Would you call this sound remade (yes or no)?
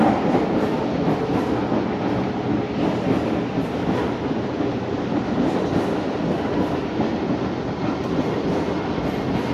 no